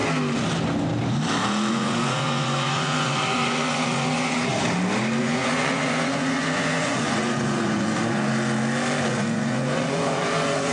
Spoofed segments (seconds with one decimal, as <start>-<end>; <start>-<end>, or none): 1.7-4.5; 5.2-8.3; 9.1-10.7